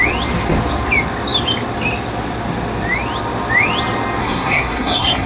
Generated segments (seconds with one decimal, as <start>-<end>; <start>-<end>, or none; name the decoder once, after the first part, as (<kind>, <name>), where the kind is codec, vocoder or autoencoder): 4.2-5.3 (codec, SNAC)